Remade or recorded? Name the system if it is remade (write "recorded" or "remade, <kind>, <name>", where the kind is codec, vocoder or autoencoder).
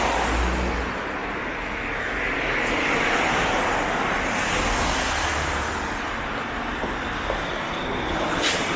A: recorded